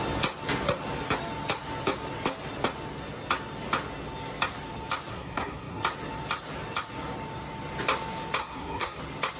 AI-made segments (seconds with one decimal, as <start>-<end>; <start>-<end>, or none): 5.1-5.8; 8.4-9.0